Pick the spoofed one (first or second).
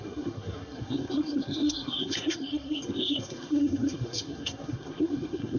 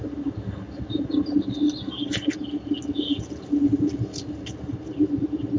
first